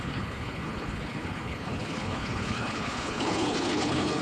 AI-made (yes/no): yes